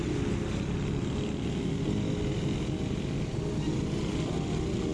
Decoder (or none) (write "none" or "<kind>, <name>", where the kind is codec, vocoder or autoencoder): none